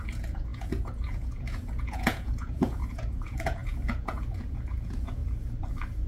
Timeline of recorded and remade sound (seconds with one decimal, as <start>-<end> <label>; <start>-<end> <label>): 0.0-5.2 remade; 5.2-6.1 recorded